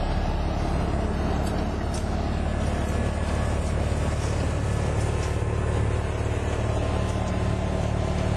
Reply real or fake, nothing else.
real